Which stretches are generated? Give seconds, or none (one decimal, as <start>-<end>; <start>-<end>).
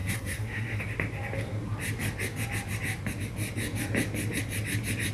0.0-0.8